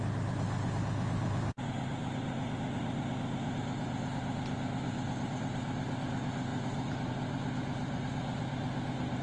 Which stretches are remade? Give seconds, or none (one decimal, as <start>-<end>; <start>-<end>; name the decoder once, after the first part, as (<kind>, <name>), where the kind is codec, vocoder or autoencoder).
none